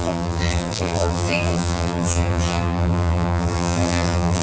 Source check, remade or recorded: remade